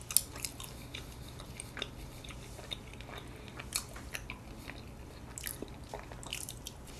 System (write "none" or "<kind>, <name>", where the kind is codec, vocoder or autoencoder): none